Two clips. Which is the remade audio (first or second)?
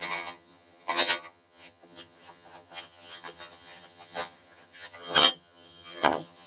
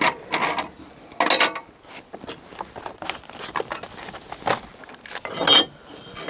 first